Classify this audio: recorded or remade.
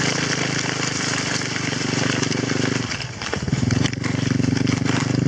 recorded